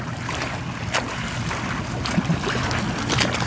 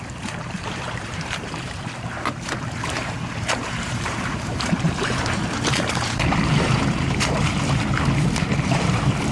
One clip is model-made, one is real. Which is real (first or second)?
first